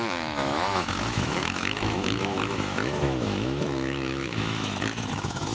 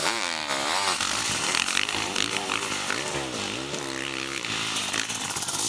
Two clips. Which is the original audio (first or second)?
second